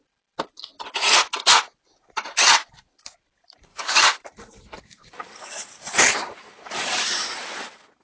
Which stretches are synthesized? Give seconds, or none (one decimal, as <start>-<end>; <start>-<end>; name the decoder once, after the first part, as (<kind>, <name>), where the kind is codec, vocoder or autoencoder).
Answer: 3.7-7.0 (vocoder, BigVGAN v2)